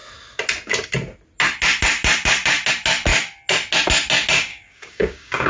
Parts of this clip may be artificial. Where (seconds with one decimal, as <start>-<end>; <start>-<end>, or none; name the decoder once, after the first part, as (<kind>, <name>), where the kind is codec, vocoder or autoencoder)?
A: 4.5-5.5 (codec, DAC)